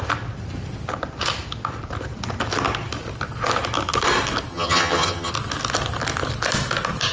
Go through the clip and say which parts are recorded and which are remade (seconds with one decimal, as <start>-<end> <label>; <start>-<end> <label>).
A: 0.0-4.5 recorded; 4.5-5.3 remade; 5.3-7.1 recorded